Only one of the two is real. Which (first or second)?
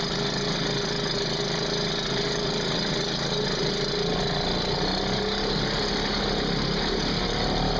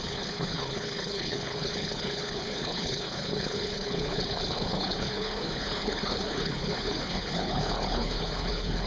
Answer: first